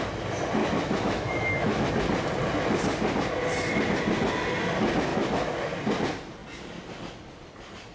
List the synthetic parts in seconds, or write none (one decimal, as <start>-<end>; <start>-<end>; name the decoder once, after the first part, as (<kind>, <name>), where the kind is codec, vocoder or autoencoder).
0.6-1.9 (autoencoder, DAC-VAE); 5.1-5.7